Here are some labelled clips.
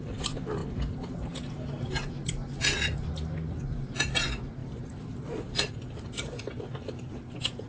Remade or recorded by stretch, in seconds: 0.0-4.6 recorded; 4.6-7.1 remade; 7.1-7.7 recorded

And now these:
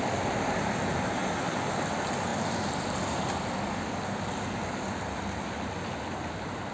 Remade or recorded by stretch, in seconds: 0.0-6.7 recorded